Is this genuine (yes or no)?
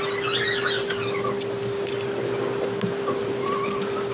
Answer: yes